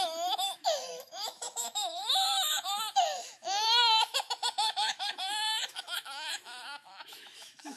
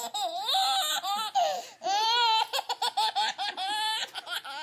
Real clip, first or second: second